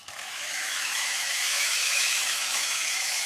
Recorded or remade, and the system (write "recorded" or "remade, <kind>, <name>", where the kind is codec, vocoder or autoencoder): remade, autoencoder, DAC-VAE